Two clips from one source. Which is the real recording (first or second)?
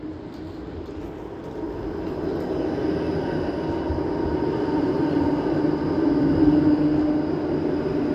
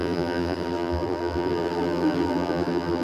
first